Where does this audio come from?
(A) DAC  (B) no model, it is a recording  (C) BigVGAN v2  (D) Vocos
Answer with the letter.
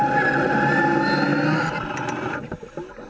B